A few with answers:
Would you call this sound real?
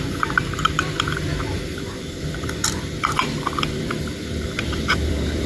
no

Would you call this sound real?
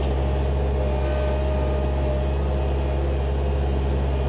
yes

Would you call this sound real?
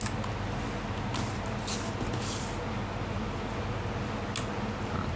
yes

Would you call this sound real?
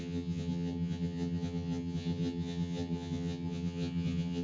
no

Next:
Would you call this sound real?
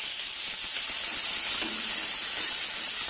yes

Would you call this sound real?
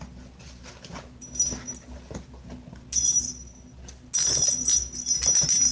yes